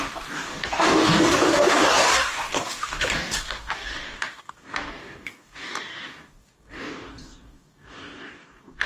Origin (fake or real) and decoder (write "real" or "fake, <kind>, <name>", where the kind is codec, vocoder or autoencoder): fake, codec, DAC